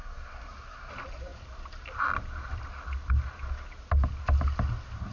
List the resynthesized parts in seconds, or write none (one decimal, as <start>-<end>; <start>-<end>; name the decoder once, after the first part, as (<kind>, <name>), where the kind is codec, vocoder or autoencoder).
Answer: 0.0-0.9 (codec, SNAC)